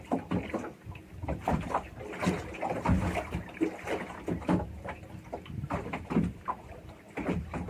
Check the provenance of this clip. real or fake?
fake